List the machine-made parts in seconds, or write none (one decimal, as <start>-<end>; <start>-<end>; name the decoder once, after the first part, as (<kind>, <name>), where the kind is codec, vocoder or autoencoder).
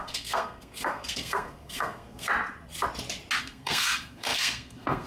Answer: 0.0-2.3 (codec, SNAC); 3.4-5.1